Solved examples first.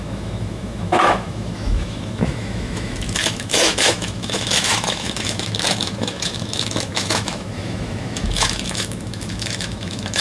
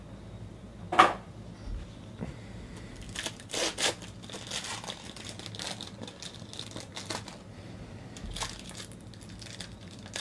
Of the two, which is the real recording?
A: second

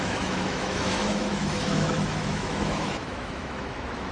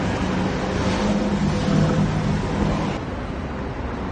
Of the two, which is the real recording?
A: second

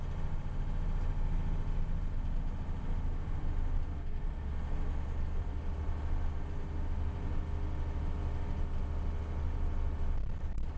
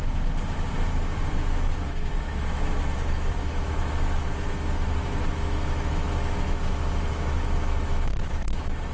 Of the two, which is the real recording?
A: first